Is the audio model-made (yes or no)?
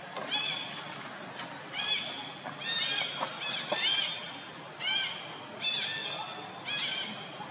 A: no